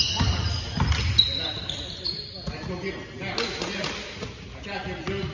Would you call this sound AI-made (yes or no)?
no